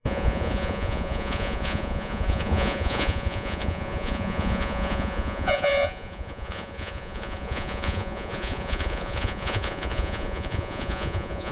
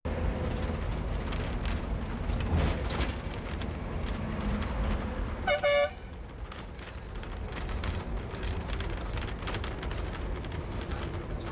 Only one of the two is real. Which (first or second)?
second